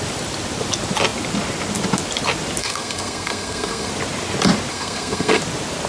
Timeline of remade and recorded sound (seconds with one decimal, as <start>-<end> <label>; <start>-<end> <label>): 0.0-2.6 recorded; 2.6-3.9 remade; 3.9-4.7 recorded; 4.7-5.4 remade; 5.4-5.9 recorded

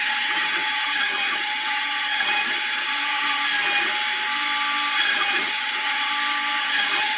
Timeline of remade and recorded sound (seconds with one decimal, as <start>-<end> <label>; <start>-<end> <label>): 0.0-3.4 remade; 3.4-4.9 recorded; 4.9-6.1 remade; 6.1-6.6 recorded; 6.6-7.2 remade

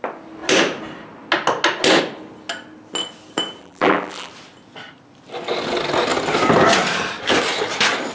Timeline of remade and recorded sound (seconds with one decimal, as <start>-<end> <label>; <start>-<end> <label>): 0.0-3.6 recorded; 3.6-4.3 remade; 4.3-8.1 recorded

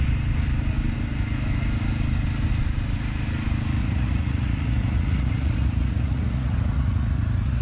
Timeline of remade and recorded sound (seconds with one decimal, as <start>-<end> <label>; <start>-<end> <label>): 0.0-3.8 recorded; 3.8-7.6 remade

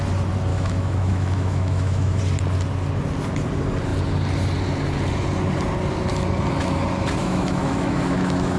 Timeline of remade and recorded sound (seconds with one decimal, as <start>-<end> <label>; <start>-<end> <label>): 0.0-0.5 recorded; 0.5-2.2 remade; 2.2-7.2 recorded; 7.2-8.6 remade

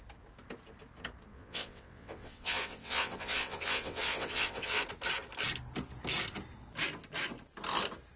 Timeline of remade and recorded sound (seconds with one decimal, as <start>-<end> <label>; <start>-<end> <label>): 0.0-1.3 recorded; 1.3-4.8 remade; 4.8-8.2 recorded

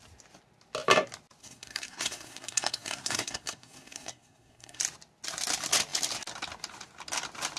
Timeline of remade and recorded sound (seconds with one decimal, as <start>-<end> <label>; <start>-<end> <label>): 0.0-1.4 recorded; 1.4-4.8 remade; 4.8-7.6 recorded

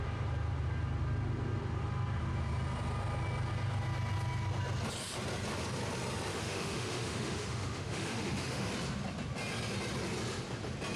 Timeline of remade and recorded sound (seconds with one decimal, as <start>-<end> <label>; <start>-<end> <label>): 0.0-6.3 recorded; 6.3-8.7 remade; 8.7-11.0 recorded